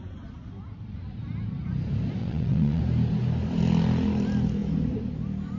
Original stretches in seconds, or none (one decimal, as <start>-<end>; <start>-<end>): 0.0-2.2; 2.8-5.6